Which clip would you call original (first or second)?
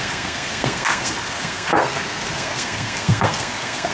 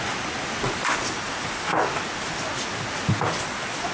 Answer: second